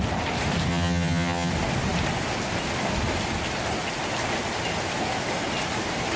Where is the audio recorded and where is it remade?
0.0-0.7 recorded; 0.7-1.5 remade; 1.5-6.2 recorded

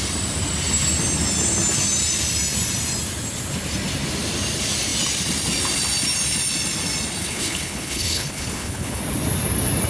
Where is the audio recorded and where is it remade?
0.0-7.2 recorded; 7.2-9.0 remade; 9.0-9.9 recorded

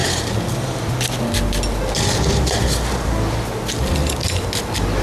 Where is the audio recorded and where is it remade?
0.0-5.0 recorded

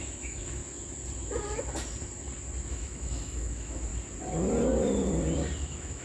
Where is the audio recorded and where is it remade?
0.0-0.6 remade; 0.6-2.7 recorded; 2.7-3.9 remade; 3.9-5.6 recorded; 5.6-6.0 remade

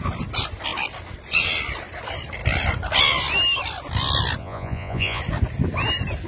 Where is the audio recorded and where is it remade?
0.0-4.4 recorded; 4.4-5.2 remade; 5.2-6.3 recorded

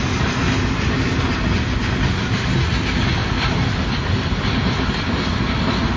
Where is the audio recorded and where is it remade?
0.0-3.2 recorded; 3.2-5.6 remade; 5.6-6.0 recorded

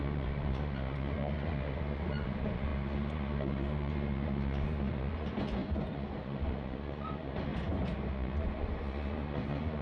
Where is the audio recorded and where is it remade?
0.0-7.5 remade; 7.5-8.1 recorded; 8.1-9.8 remade

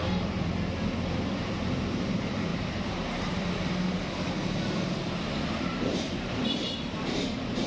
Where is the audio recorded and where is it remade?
0.0-2.5 recorded; 2.5-3.5 remade; 3.5-5.7 recorded; 5.7-7.7 remade